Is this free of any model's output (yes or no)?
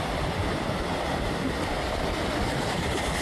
no